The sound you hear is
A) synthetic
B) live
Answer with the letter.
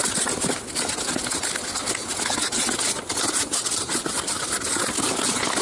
B